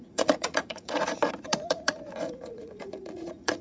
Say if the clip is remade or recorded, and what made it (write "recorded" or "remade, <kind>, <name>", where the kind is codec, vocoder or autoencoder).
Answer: remade, vocoder, Vocos